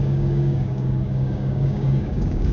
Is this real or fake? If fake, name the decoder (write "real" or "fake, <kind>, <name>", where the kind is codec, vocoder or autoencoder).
fake, codec, DAC